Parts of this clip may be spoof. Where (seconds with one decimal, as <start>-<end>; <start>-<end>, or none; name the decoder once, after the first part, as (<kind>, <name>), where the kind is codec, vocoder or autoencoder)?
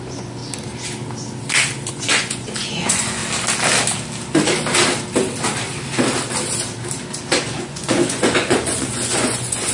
0.0-0.4 (vocoder, Vocos); 1.9-3.2; 7.4-9.7